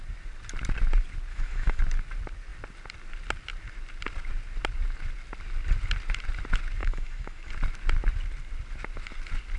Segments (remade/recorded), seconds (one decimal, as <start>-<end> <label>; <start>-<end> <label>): 0.0-1.3 recorded; 1.3-1.8 remade; 1.8-6.8 recorded; 6.8-7.5 remade; 7.5-9.6 recorded